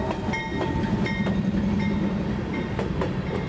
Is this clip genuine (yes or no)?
yes